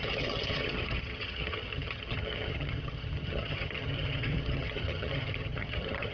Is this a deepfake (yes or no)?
yes